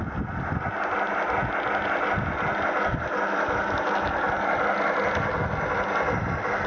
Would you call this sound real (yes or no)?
yes